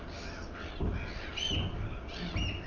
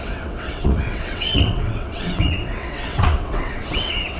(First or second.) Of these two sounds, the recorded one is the first